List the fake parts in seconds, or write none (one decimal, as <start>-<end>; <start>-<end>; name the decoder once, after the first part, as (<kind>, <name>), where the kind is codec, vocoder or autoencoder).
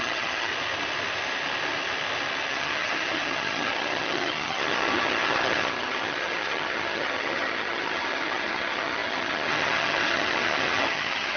0.0-0.5 (vocoder, HiFi-GAN); 2.5-11.4